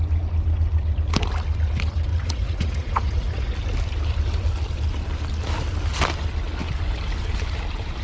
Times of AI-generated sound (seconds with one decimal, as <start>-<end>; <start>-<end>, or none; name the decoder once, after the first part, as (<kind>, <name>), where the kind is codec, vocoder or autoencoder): 2.1-3.5 (vocoder, Vocos)